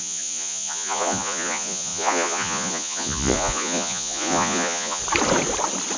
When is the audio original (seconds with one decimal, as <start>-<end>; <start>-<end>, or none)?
5.0-6.0